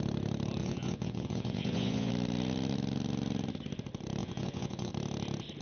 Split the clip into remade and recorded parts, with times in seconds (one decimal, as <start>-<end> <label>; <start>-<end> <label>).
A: 0.0-0.6 recorded; 0.6-2.1 remade; 2.1-4.2 recorded; 4.2-4.9 remade; 4.9-5.6 recorded